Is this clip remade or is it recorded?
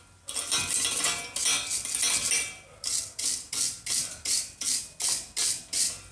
recorded